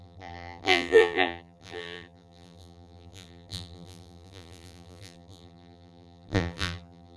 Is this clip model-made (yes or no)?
yes